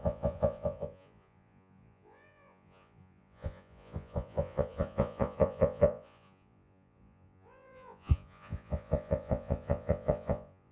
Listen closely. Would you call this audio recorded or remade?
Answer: remade